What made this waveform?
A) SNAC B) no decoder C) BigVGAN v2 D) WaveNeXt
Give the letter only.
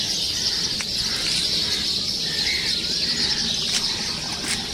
B